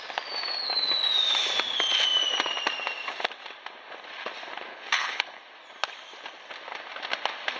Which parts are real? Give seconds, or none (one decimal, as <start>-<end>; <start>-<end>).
0.0-4.7; 5.4-7.6